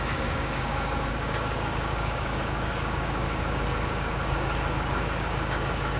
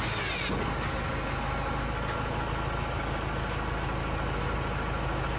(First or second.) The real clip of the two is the second